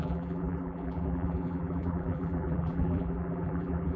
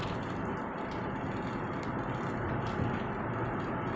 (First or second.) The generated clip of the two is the first